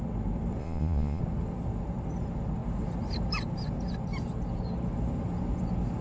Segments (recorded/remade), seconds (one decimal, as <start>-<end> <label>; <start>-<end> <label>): 0.0-0.6 recorded; 0.6-1.2 remade; 1.2-6.0 recorded